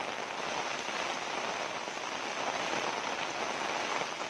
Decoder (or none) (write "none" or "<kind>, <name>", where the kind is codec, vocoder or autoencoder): none